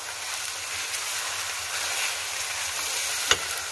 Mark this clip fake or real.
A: real